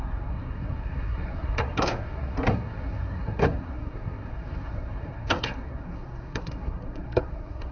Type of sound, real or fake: fake